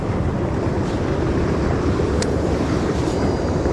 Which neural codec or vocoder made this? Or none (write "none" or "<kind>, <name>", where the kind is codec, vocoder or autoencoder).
vocoder, BigVGAN v2